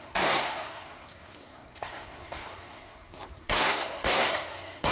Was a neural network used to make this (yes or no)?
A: yes